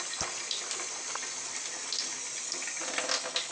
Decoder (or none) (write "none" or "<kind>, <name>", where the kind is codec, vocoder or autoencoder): none